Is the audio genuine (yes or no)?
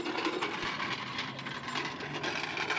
yes